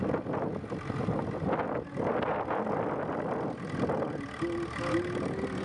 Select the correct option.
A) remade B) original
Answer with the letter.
B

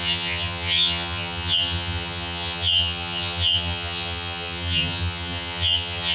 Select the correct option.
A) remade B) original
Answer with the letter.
A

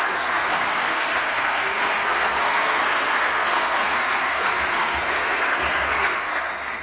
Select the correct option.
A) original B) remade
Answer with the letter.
B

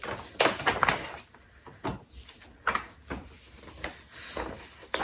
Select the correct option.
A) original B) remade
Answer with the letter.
A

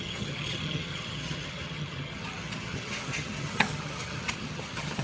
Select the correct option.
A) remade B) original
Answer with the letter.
A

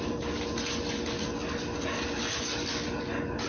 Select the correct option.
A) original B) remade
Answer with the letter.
A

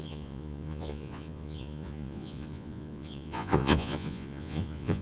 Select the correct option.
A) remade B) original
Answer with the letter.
A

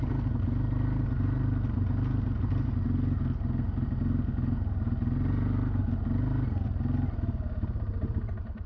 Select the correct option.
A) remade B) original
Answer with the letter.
B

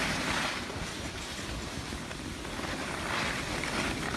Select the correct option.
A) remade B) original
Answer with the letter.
B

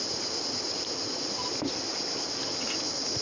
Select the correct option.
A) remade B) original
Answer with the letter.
B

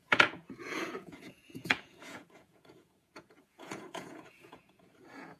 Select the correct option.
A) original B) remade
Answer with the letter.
B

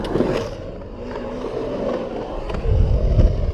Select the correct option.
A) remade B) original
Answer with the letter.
B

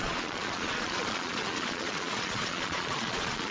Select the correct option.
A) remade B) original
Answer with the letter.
A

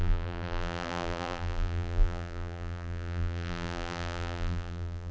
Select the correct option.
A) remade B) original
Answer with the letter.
A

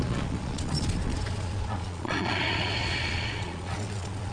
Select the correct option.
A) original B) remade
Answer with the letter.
B